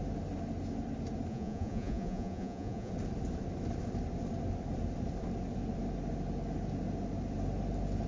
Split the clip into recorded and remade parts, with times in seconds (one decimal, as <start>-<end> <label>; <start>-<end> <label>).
0.0-1.3 recorded; 1.3-2.9 remade; 2.9-8.1 recorded